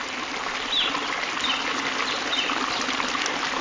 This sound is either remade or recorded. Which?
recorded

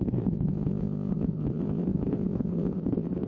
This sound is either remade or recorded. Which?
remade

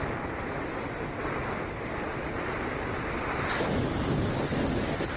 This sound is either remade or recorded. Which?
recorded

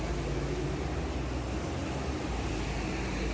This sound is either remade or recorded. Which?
recorded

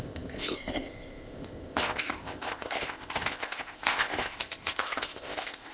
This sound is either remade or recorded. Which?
remade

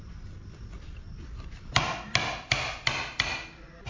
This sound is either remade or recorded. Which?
recorded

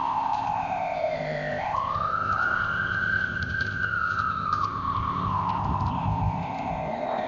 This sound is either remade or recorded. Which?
remade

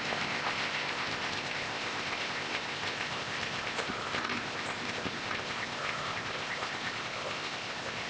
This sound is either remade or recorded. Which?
remade